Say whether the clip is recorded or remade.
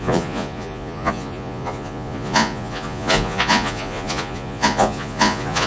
remade